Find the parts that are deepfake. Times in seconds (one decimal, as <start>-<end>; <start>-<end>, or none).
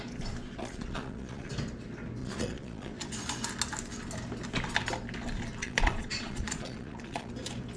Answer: 0.6-1.5; 2.2-2.9; 5.6-7.3